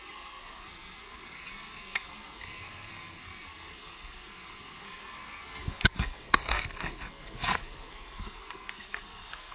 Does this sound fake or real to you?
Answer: fake